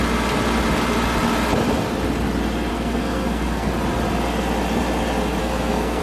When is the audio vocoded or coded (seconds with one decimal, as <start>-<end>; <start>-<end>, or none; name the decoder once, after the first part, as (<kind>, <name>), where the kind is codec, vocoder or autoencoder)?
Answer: 2.7-3.7 (codec, SNAC); 5.4-6.0